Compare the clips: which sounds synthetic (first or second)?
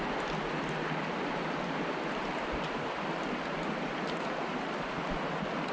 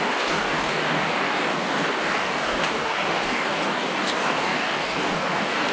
second